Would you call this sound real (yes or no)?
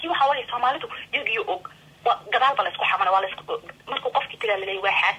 yes